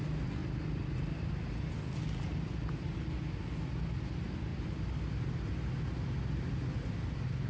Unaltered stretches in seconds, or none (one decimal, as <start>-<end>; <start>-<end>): 0.0-0.4; 1.3-4.5; 5.2-7.5